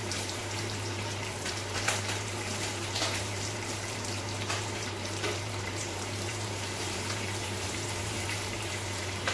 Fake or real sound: fake